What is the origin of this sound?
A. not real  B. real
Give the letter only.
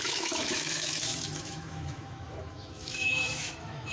A